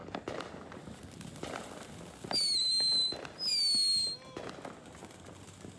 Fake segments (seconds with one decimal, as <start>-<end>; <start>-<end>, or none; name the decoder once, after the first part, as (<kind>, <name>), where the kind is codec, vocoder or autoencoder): none